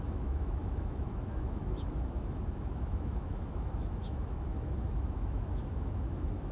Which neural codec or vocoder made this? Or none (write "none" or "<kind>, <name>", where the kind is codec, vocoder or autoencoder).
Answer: autoencoder, DAC-VAE